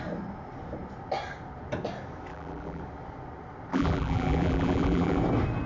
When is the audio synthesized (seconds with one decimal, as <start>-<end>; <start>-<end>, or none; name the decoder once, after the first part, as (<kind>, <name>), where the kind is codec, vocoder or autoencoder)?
2.3-2.8 (vocoder, BigVGAN v2); 3.7-5.2